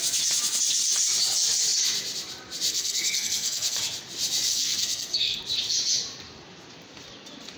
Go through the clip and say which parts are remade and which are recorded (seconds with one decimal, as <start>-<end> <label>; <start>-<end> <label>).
0.0-2.7 recorded; 2.7-3.8 remade; 3.8-4.5 recorded; 4.5-5.4 remade; 5.4-7.6 recorded